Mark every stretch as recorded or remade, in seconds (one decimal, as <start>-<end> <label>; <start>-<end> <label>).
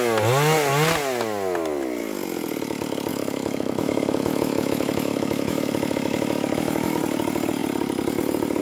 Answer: 0.0-3.1 recorded; 3.1-7.0 remade; 7.0-8.6 recorded